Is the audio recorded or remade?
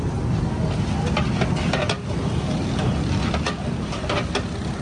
recorded